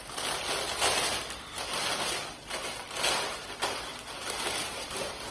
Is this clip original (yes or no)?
no